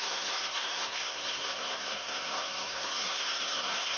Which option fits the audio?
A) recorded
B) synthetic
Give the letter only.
B